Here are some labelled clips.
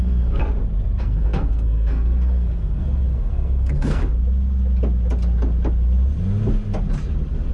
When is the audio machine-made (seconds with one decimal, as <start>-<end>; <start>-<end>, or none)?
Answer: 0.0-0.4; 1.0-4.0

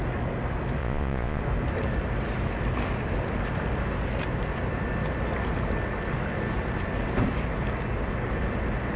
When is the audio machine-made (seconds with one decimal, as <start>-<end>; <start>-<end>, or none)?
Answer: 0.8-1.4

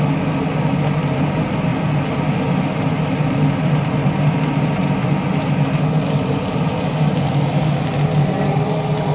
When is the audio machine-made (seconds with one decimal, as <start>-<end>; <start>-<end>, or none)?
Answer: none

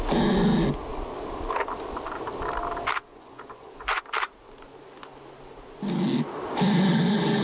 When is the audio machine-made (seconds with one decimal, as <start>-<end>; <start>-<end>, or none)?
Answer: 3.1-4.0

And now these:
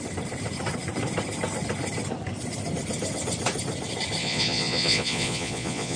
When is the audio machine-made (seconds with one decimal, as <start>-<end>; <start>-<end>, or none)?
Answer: 4.2-6.0

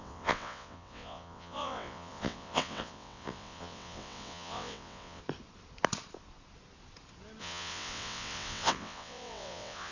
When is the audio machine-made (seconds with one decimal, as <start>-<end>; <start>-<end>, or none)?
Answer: 0.0-5.2; 7.4-9.9